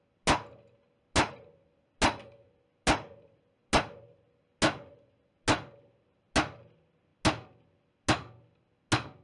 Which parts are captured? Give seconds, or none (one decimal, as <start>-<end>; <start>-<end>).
0.0-9.2